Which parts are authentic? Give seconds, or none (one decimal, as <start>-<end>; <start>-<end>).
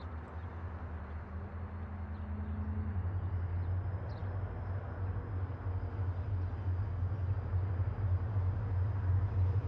0.0-9.7